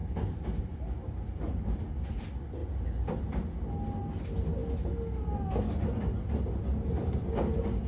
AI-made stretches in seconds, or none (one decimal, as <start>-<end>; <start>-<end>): none